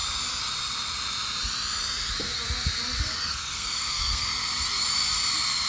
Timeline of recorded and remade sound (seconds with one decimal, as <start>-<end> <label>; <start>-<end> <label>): 0.0-3.3 recorded; 3.3-4.3 remade; 4.3-5.7 recorded